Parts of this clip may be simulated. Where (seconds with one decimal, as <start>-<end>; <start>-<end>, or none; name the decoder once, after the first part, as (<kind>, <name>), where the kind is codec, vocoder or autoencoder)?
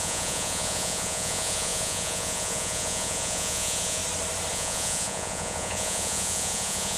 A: 0.0-4.0 (vocoder, Vocos); 4.5-7.0